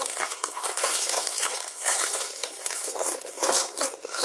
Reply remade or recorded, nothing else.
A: remade